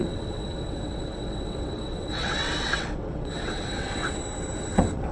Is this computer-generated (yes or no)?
yes